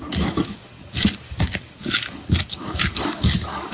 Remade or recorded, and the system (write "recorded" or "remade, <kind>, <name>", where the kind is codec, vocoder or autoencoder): remade, codec, DAC